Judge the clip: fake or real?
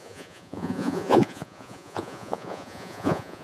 fake